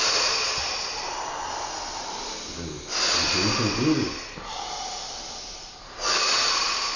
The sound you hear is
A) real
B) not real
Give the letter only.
A